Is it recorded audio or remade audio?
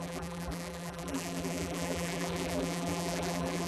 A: remade